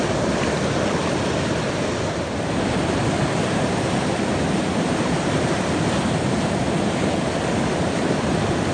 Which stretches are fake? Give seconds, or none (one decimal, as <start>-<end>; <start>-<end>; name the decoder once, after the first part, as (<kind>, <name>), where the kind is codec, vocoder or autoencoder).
3.2-4.2 (vocoder, BigVGAN v2)